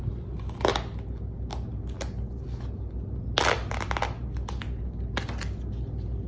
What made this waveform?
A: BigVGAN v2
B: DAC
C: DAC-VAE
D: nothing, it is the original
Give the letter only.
D